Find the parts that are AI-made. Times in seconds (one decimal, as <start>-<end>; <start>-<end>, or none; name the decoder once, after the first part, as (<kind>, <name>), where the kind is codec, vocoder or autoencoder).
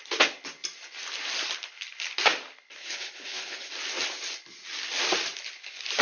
2.8-3.7 (codec, HILCodec)